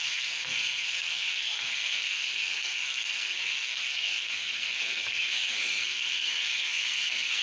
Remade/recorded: remade